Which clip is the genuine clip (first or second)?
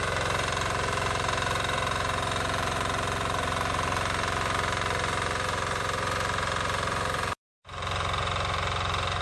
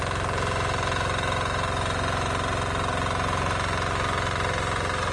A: second